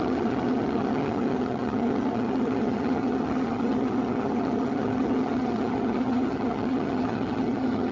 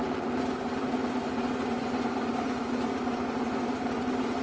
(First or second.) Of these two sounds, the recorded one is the second